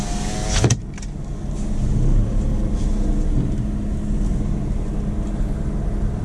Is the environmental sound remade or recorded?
recorded